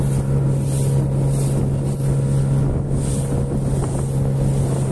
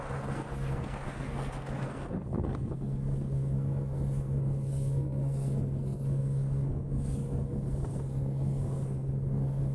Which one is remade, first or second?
second